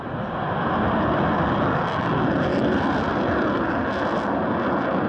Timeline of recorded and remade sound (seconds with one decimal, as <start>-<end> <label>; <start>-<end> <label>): 0.0-2.5 recorded; 2.5-3.5 remade; 3.5-5.1 recorded